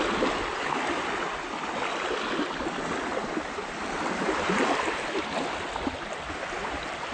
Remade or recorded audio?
recorded